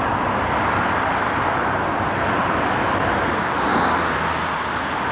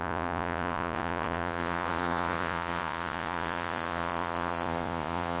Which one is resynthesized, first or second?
second